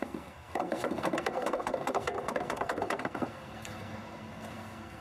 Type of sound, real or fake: fake